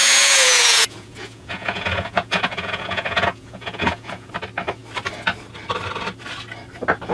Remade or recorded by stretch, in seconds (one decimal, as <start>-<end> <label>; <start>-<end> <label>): 0.0-4.3 remade; 4.3-7.1 recorded